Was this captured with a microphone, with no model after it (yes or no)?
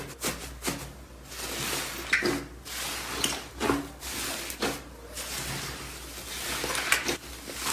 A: yes